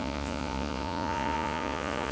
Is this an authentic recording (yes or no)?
no